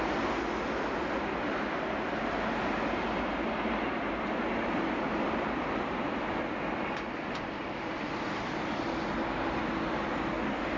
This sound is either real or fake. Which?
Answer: real